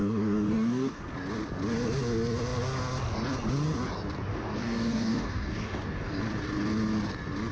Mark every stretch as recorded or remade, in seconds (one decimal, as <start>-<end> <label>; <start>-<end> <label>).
0.0-1.0 remade; 1.0-4.3 recorded; 4.3-6.2 remade; 6.2-7.5 recorded